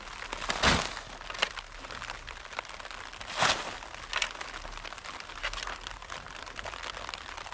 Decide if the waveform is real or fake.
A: real